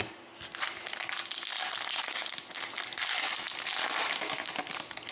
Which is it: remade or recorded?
recorded